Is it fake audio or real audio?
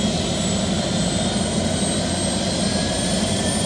real